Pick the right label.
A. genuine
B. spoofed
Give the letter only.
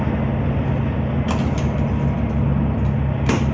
A